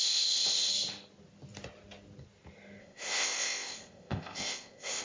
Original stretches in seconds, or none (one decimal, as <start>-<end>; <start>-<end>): 0.7-2.8